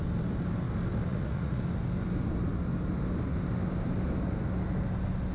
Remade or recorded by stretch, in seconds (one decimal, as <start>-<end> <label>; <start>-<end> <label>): 0.0-1.1 recorded; 1.1-1.6 remade; 1.6-5.3 recorded

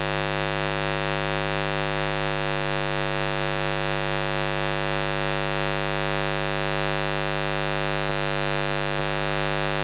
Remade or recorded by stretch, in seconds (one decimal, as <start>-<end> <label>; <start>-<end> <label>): 0.0-9.8 recorded